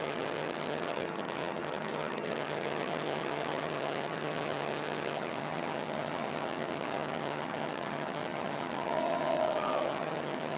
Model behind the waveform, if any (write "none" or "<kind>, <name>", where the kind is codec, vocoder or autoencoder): vocoder, HiFi-GAN